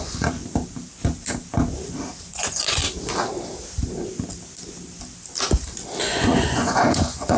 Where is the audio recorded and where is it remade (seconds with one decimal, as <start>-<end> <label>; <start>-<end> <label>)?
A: 0.0-0.4 remade; 0.4-2.3 recorded; 2.3-2.8 remade; 2.8-6.0 recorded; 6.0-7.4 remade